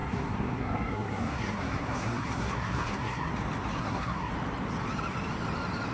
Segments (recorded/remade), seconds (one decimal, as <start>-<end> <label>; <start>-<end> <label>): 0.0-3.3 remade; 3.3-3.7 recorded; 3.7-4.3 remade; 4.3-5.9 recorded